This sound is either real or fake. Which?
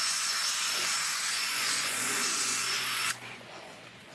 fake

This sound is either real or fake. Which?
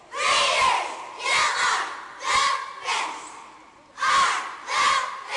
real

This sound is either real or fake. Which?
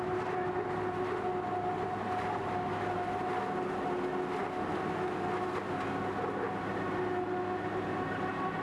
real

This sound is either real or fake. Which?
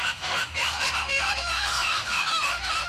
fake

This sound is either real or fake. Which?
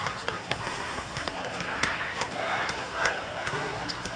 fake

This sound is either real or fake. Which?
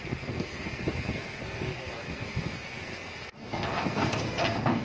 fake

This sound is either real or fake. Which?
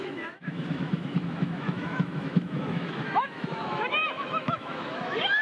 fake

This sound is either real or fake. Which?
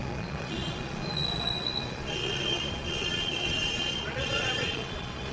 fake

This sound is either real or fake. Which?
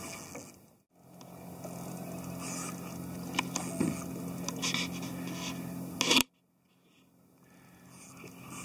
real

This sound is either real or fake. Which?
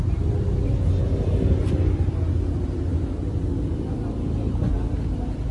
real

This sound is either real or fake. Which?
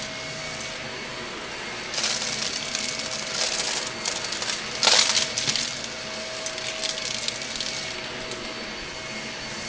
real